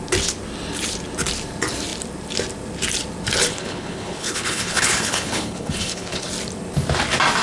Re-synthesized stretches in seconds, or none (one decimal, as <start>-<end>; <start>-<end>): 3.5-6.3